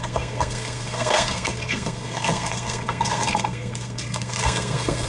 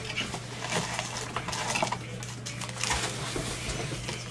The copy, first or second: first